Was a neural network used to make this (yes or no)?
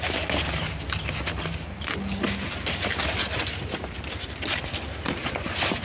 no